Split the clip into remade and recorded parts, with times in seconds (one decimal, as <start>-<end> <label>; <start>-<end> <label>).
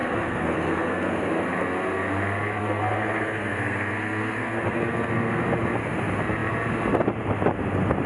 0.0-1.1 remade; 1.1-2.6 recorded; 2.6-5.4 remade; 5.4-8.1 recorded